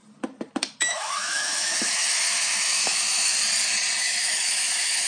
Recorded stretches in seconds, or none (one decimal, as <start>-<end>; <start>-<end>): 0.0-0.8; 3.4-4.0